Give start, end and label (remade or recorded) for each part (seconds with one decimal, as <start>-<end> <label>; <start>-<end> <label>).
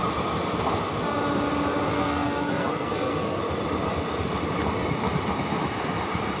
0.0-1.9 recorded; 1.9-3.4 remade; 3.4-6.4 recorded